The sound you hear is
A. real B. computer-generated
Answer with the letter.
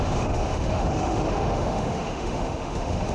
B